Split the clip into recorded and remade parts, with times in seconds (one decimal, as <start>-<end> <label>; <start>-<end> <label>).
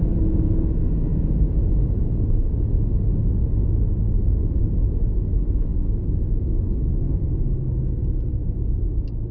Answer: 0.0-4.4 recorded; 4.4-5.1 remade; 5.1-5.7 recorded; 5.7-7.2 remade; 7.2-9.3 recorded